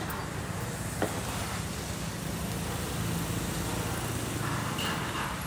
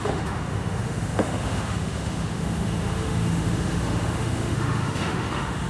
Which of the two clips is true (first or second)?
first